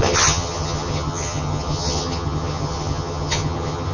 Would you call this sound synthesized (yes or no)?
yes